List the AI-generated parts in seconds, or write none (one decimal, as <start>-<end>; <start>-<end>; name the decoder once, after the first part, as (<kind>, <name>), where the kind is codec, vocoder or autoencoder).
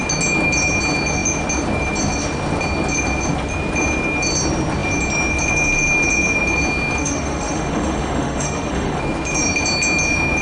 7.0-9.0 (autoencoder, DAC-VAE)